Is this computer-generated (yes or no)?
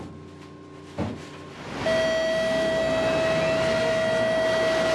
no